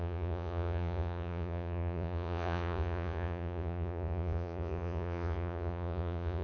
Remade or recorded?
remade